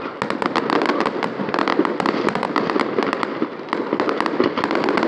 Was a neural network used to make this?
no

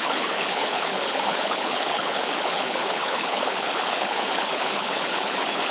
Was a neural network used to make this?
yes